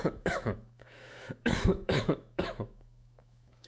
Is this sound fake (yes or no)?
yes